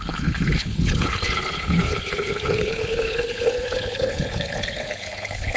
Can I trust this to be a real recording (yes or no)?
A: no